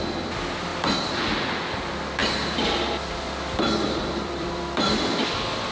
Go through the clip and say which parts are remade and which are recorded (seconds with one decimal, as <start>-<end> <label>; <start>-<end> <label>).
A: 0.0-0.7 recorded; 0.7-1.2 remade; 1.2-2.2 recorded; 2.2-5.7 remade